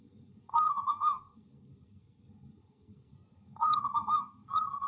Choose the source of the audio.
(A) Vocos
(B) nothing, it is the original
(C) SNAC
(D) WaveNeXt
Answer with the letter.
C